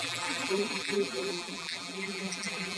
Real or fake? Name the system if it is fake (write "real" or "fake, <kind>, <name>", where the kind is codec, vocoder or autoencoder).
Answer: fake, vocoder, BigVGAN v2